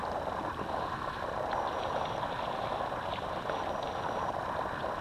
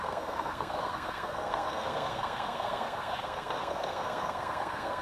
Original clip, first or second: first